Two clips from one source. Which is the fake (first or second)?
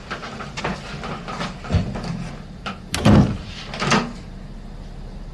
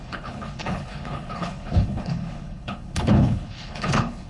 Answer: second